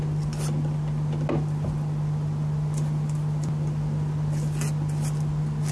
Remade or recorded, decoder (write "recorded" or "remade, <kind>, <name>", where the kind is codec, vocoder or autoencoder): recorded